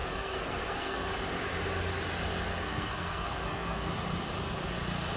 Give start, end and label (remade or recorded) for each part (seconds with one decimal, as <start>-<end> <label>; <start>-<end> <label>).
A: 0.0-1.1 remade; 1.1-2.5 recorded; 2.5-3.9 remade; 3.9-5.2 recorded

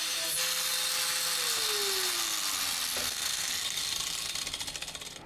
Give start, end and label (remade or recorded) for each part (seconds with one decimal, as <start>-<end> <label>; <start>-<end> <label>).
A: 0.0-3.0 recorded; 3.0-3.5 remade; 3.5-5.3 recorded

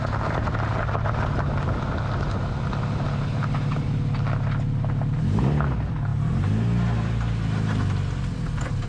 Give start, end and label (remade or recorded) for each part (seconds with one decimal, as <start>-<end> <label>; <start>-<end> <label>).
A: 0.0-8.9 recorded

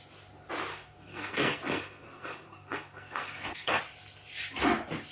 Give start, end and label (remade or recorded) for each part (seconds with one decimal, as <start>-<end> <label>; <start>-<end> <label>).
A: 0.0-0.7 recorded; 0.7-3.8 remade; 3.8-5.1 recorded

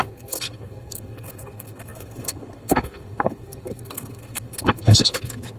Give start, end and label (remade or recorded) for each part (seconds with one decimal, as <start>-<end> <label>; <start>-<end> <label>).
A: 0.0-5.6 remade